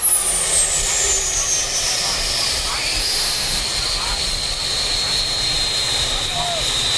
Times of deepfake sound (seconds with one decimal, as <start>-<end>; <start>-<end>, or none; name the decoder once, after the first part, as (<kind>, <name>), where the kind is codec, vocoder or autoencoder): 3.0-3.6 (autoencoder, DAC-VAE)